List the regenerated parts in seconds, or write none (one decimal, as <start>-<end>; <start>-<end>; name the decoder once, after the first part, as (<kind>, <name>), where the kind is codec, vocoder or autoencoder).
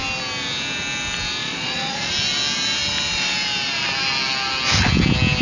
1.4-2.1 (vocoder, Vocos)